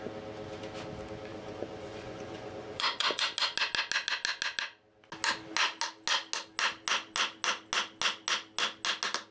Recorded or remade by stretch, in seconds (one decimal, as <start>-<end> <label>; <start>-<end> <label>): 0.0-1.3 recorded; 1.3-3.2 remade; 3.2-9.3 recorded